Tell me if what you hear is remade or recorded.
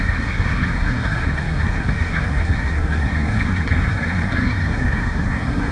remade